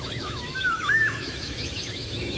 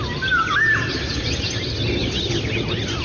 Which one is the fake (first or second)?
first